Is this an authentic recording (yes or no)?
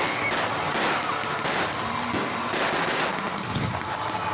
yes